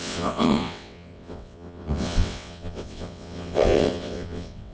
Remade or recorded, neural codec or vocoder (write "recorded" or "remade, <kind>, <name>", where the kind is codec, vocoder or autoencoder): remade, vocoder, WaveNeXt